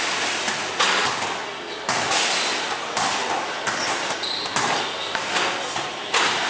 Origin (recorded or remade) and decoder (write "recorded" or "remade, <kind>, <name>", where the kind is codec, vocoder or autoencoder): recorded